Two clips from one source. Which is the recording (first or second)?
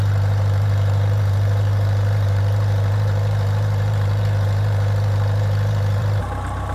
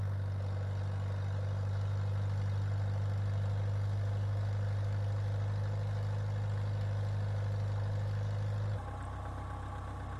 second